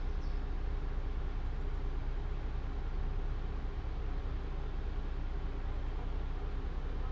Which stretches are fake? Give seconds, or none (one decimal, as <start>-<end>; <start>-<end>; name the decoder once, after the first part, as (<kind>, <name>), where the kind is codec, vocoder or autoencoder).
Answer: none